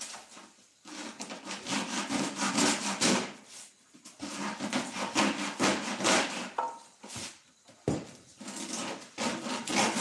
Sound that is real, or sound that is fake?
real